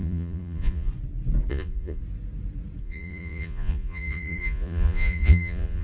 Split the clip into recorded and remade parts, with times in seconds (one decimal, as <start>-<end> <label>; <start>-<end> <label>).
0.0-0.9 remade; 0.9-1.5 recorded; 1.5-2.0 remade; 2.0-2.8 recorded; 2.8-5.8 remade